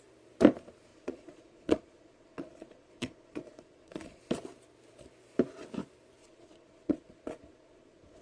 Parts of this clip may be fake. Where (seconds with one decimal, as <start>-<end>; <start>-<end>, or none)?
0.9-4.2; 6.2-8.2